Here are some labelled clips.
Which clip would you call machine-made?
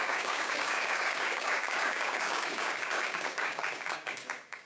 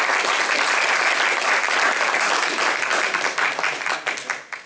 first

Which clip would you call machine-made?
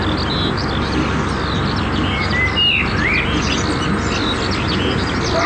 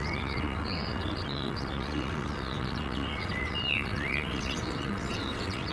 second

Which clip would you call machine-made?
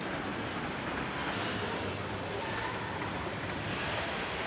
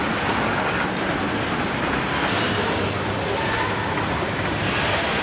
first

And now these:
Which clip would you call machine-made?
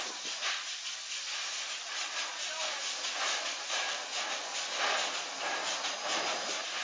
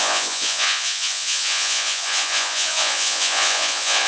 second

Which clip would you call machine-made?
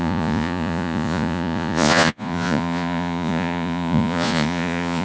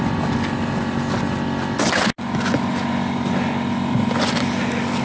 first